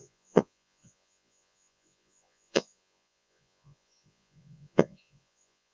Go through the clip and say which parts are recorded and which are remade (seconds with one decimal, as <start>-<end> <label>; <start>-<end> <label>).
0.0-5.7 remade

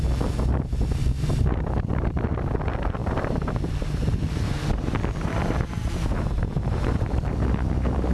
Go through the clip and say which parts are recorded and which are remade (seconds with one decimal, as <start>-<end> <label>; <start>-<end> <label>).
0.0-1.0 recorded; 1.0-2.2 remade; 2.2-3.0 recorded; 3.0-8.1 remade